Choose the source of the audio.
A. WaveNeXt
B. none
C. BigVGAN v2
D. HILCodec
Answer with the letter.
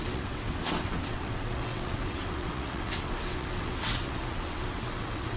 A